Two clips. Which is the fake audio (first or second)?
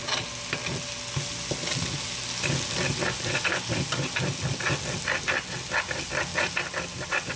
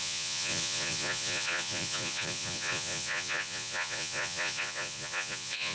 second